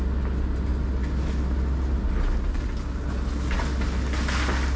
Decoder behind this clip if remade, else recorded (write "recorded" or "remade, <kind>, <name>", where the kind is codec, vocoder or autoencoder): recorded